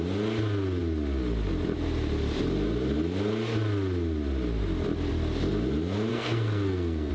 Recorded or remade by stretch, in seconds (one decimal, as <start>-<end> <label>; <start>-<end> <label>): 0.0-6.1 recorded; 6.1-7.1 remade